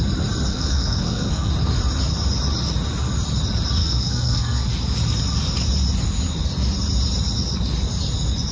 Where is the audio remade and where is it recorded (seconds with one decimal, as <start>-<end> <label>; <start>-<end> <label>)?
0.0-0.5 recorded; 0.5-1.5 remade; 1.5-3.8 recorded; 3.8-4.7 remade; 4.7-8.5 recorded

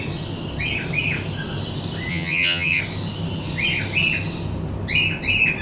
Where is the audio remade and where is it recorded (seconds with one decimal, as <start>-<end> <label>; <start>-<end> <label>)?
0.0-2.1 recorded; 2.1-2.8 remade; 2.8-5.6 recorded

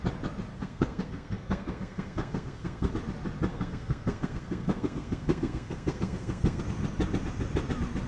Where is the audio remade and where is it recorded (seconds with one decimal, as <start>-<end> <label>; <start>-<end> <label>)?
0.0-0.5 recorded; 0.5-2.9 remade; 2.9-3.5 recorded; 3.5-6.6 remade; 6.6-8.1 recorded

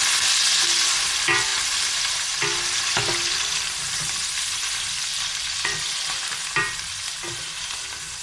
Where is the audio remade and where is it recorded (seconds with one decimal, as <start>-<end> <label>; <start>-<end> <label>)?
0.0-8.2 recorded

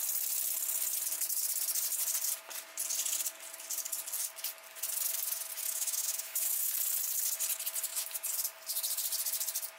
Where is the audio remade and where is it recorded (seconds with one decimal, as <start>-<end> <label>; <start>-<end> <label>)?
0.0-5.6 recorded; 5.6-6.7 remade; 6.7-9.8 recorded

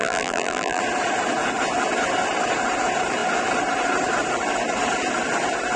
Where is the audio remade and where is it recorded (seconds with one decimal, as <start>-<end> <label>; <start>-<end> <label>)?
0.0-0.8 remade; 0.8-5.8 recorded

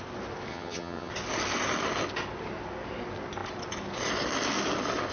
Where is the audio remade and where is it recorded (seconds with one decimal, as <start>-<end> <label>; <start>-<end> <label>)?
0.0-0.5 recorded; 0.5-1.1 remade; 1.1-5.1 recorded